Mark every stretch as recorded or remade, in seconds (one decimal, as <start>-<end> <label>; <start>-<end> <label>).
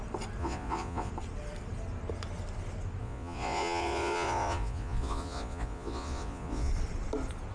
0.0-0.4 recorded; 0.4-1.1 remade; 1.1-3.0 recorded; 3.0-6.7 remade; 6.7-7.5 recorded